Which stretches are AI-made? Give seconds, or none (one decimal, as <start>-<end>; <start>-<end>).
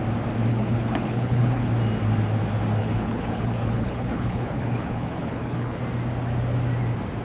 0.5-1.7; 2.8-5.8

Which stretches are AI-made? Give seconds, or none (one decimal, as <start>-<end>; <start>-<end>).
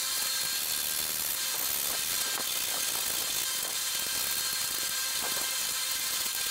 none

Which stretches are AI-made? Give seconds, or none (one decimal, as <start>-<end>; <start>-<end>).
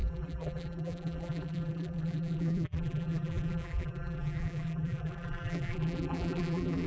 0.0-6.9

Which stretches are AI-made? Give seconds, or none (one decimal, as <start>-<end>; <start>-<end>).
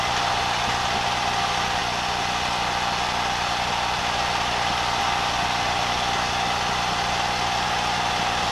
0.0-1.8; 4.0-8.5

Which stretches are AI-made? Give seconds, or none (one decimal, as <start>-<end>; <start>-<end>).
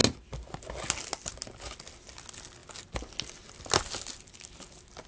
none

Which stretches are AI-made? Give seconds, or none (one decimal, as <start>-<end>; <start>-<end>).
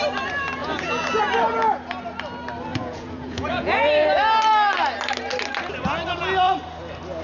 0.6-1.2; 2.7-3.9